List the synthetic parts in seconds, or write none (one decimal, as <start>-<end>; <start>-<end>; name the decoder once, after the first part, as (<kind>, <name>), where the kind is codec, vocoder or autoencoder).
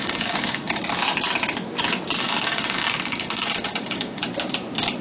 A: 0.0-0.8 (codec, DAC); 2.2-4.2